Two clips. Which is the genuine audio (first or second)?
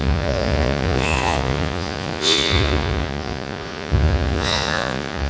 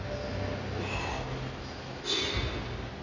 second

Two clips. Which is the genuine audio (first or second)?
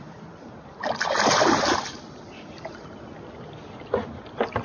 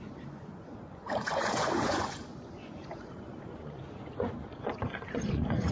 first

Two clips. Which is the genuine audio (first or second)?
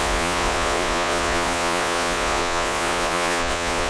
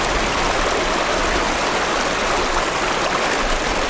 second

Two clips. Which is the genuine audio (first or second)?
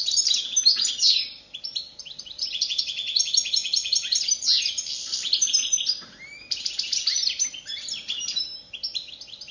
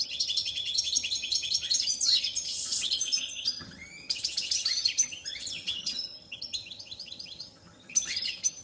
first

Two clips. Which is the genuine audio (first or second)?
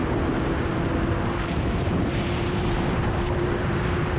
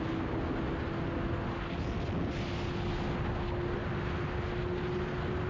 second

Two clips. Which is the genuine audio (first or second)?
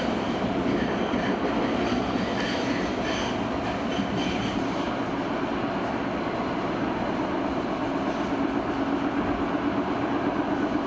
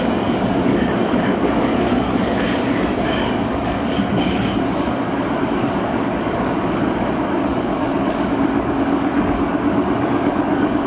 first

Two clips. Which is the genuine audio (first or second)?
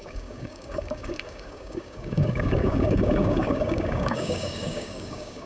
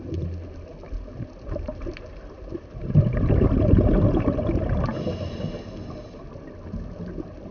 second